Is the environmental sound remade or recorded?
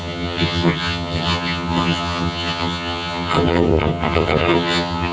remade